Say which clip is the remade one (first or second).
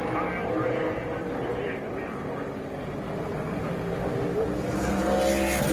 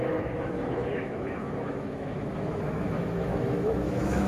second